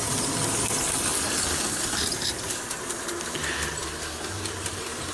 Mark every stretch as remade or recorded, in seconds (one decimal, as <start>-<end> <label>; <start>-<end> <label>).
0.0-5.1 recorded